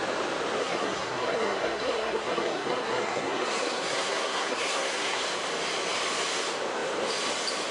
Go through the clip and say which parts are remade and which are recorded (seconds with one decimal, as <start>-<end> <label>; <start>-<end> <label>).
0.0-0.6 recorded; 0.6-5.2 remade; 5.2-7.7 recorded